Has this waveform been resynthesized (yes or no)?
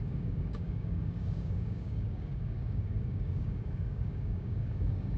yes